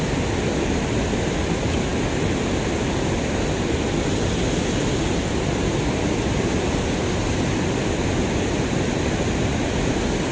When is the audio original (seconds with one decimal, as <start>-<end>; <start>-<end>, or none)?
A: 0.0-10.3

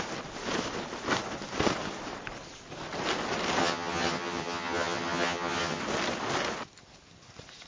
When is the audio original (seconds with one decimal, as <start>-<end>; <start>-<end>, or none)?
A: 0.0-3.6; 5.8-7.7